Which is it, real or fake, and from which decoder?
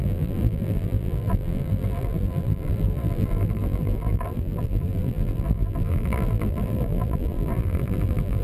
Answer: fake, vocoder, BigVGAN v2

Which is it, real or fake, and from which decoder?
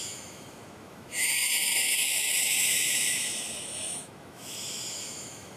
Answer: fake, autoencoder, DAC-VAE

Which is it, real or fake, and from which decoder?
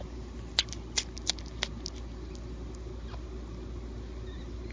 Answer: real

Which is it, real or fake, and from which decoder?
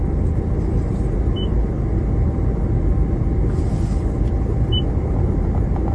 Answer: real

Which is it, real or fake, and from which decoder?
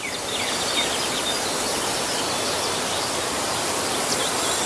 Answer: fake, vocoder, BigVGAN v2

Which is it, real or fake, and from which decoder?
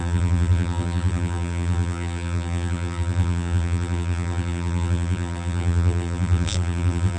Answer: fake, vocoder, BigVGAN v2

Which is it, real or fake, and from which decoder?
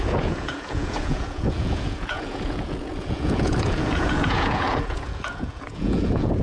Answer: fake, vocoder, Vocos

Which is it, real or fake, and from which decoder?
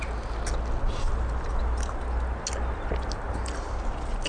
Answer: real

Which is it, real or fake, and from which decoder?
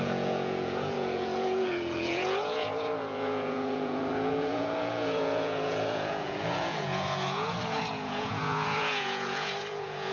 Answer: fake, vocoder, Vocos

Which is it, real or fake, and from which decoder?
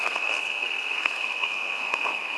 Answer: fake, codec, SNAC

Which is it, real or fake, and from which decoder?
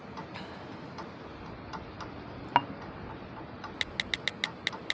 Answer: real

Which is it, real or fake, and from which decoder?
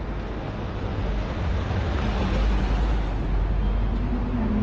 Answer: real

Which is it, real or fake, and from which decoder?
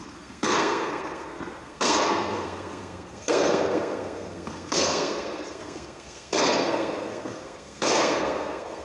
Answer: fake, codec, SNAC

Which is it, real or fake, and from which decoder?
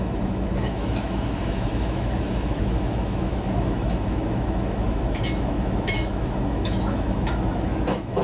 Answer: fake, autoencoder, DAC-VAE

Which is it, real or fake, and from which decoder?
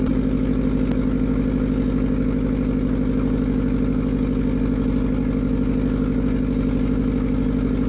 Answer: real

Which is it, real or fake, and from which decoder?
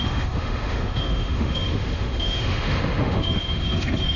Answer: fake, autoencoder, DAC-VAE